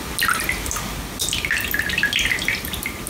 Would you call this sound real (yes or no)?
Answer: yes